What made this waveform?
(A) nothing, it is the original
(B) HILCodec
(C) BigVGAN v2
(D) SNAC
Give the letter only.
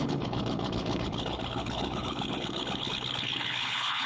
B